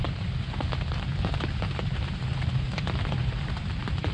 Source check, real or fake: fake